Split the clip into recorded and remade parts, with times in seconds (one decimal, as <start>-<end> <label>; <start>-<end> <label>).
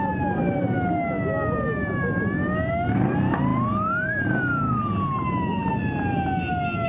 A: 0.0-6.9 recorded